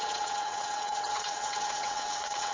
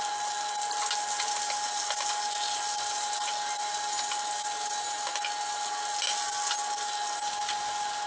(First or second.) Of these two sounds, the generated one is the first